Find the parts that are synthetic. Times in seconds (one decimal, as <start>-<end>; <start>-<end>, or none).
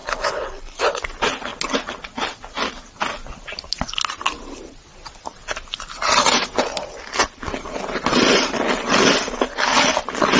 0.0-0.8